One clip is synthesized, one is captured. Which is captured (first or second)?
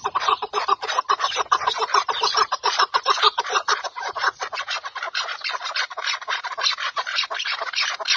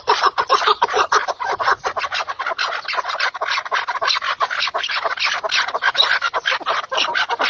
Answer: second